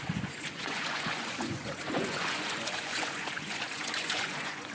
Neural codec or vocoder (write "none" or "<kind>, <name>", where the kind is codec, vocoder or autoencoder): vocoder, Vocos